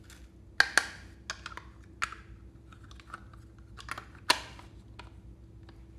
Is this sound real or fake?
real